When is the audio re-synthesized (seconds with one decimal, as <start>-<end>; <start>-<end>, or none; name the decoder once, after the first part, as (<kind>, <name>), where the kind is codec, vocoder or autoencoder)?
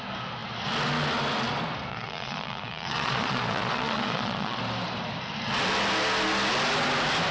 1.9-4.6 (vocoder, Vocos)